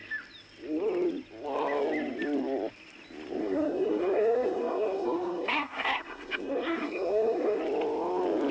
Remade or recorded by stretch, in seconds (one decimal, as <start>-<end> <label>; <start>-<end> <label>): 0.0-3.4 recorded; 3.4-7.6 remade; 7.6-8.5 recorded